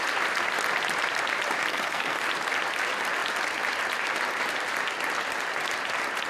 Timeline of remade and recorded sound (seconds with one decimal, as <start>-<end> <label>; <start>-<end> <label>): 0.0-1.7 recorded; 1.7-2.2 remade; 2.2-6.3 recorded